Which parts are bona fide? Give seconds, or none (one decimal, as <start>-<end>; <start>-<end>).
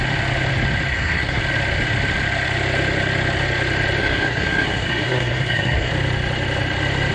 0.0-0.9; 1.4-4.0; 5.9-7.1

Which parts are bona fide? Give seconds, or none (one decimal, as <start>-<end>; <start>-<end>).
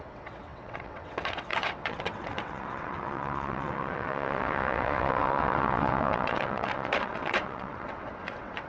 none